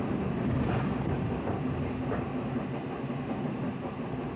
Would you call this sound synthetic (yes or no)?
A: no